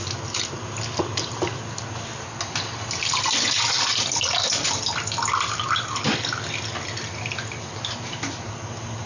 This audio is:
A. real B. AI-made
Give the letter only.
A